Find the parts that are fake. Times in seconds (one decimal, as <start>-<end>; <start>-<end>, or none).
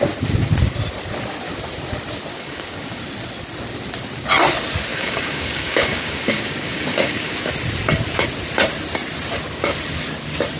2.3-3.0; 4.9-7.5